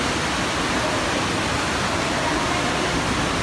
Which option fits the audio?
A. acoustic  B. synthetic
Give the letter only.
A